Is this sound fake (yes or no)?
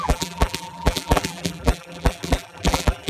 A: yes